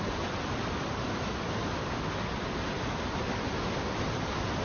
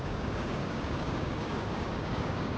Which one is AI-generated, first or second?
second